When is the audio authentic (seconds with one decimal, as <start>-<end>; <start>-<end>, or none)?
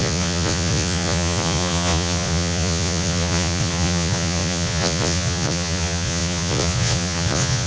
none